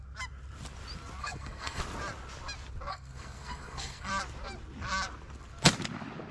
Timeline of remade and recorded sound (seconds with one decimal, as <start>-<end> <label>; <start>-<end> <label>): 0.0-1.2 recorded; 1.2-1.8 remade; 1.8-2.9 recorded; 2.9-4.1 remade; 4.1-6.3 recorded